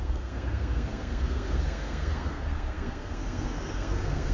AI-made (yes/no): yes